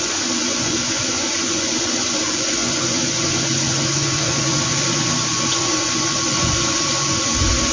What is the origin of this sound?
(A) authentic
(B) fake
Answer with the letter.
B